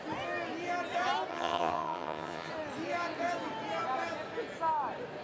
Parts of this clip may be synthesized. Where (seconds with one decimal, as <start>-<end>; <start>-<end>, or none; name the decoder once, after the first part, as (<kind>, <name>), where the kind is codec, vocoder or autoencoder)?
1.3-2.5 (vocoder, HiFi-GAN)